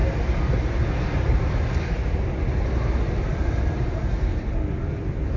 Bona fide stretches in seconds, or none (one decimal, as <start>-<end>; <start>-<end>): 0.0-5.4